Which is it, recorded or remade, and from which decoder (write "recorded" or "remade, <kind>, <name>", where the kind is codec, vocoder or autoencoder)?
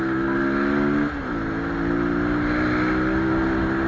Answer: recorded